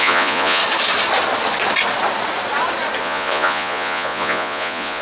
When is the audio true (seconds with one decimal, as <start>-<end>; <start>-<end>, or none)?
0.6-3.0